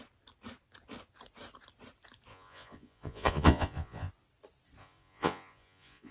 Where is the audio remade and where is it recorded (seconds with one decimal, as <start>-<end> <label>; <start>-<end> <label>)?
0.0-2.3 recorded; 2.3-4.1 remade; 4.1-4.8 recorded; 4.8-6.1 remade